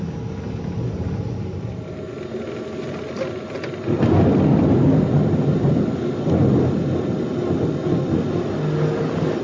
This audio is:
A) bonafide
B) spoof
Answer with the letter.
A